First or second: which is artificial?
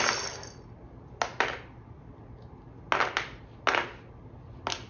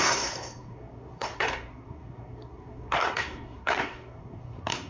second